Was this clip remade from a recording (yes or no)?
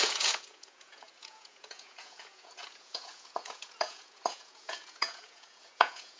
yes